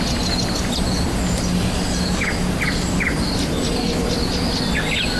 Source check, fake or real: real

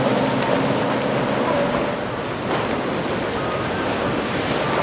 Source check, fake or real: real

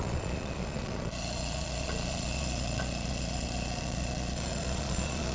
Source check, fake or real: fake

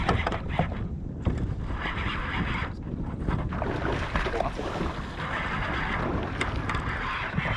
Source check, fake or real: real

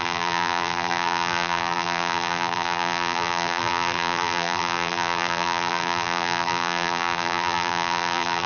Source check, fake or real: fake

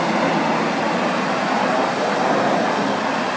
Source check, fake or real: real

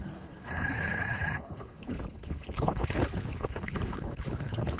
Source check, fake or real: fake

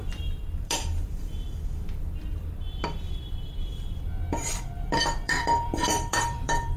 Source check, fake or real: fake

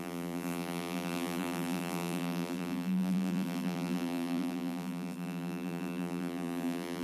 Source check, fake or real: fake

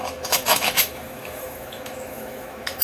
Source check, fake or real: fake